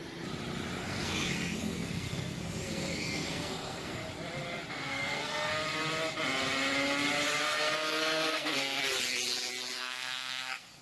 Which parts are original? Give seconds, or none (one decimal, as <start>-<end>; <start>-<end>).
0.0-0.8; 4.0-4.7; 5.5-7.4; 8.8-9.8